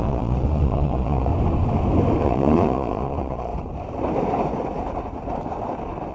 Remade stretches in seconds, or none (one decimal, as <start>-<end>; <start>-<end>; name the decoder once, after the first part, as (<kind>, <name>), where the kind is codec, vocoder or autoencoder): 0.0-1.3 (vocoder, Vocos); 2.2-3.5